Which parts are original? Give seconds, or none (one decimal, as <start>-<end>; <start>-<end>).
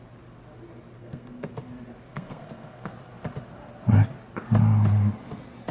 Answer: 0.0-1.0; 1.5-2.1; 2.9-5.7